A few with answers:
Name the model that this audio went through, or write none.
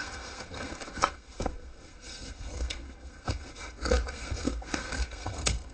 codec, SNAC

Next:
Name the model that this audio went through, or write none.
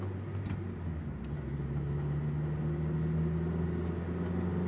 none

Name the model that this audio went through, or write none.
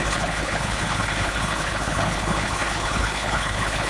codec, HILCodec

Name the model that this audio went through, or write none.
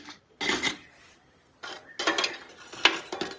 none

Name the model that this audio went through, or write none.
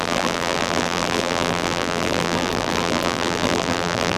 vocoder, BigVGAN v2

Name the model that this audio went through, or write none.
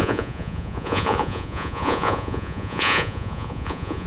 vocoder, Vocos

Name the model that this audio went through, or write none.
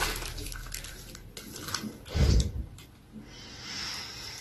none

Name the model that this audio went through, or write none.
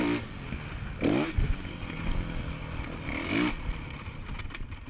none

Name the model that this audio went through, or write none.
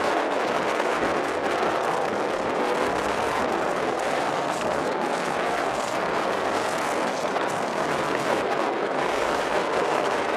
codec, SNAC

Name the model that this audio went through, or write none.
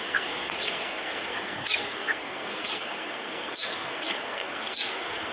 codec, SNAC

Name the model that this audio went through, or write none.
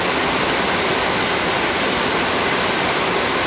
none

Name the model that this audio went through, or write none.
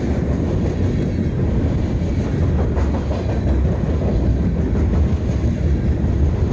none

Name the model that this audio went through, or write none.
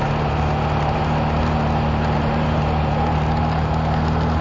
none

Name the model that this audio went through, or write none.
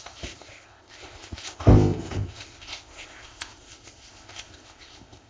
codec, ZipCodec